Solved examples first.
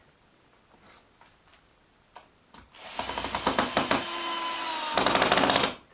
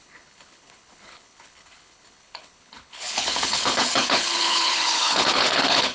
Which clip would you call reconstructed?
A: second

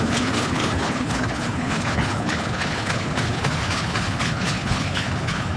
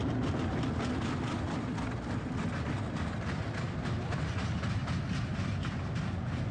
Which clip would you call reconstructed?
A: first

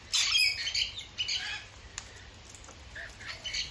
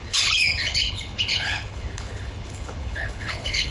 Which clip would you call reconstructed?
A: second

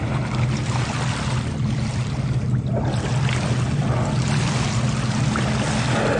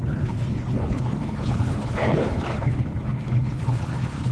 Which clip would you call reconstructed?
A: second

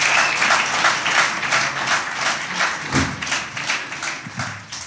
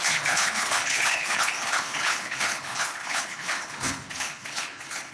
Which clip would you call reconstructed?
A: second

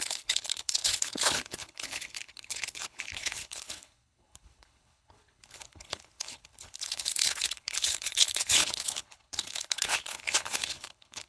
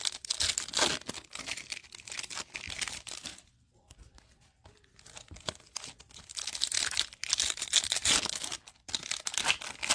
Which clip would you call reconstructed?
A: first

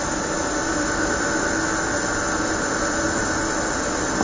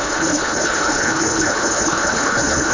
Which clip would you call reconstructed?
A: second